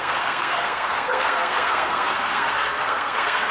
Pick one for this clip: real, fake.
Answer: fake